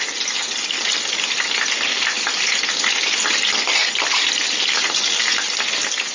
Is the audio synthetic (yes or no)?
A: no